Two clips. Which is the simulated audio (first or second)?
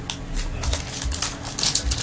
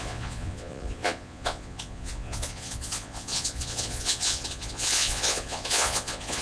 second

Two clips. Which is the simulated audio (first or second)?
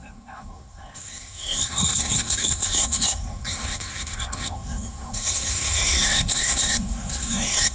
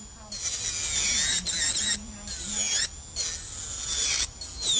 first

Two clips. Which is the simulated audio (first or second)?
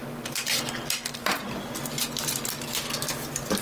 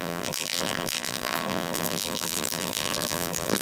second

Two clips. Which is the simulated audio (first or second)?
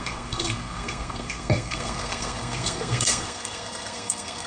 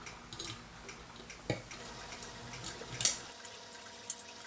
first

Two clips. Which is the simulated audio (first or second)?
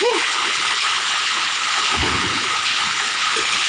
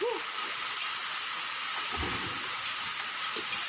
first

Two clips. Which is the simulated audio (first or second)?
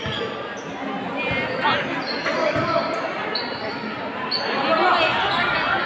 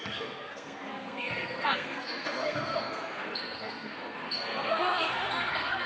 second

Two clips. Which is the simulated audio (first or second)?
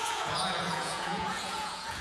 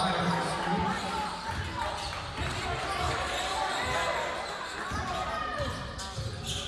first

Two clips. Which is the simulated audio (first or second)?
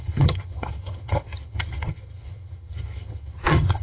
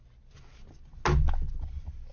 first